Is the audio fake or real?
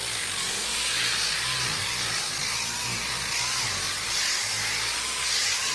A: real